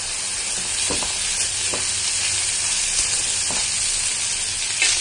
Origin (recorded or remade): recorded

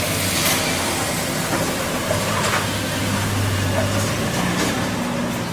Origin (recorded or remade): recorded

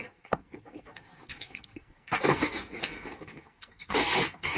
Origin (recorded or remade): remade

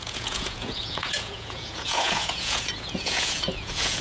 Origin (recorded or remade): remade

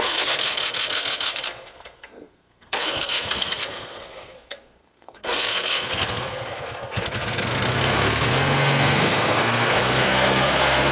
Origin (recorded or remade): remade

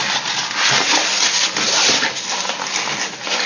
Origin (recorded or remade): recorded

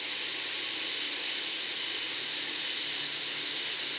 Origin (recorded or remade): recorded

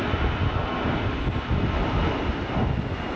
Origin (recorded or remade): recorded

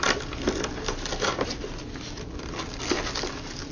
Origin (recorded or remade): recorded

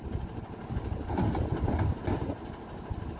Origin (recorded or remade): recorded